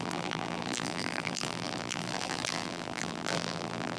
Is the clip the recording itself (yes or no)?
no